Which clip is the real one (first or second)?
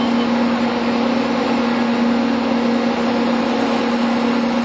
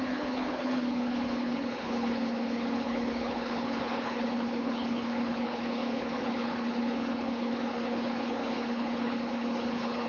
first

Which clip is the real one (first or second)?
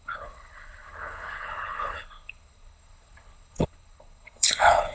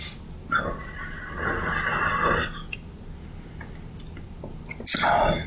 second